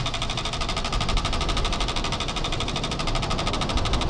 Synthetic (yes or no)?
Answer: no